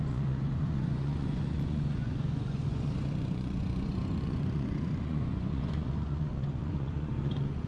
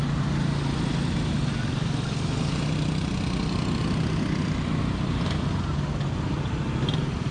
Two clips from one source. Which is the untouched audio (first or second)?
second